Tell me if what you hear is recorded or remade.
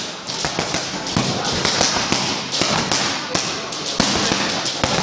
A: recorded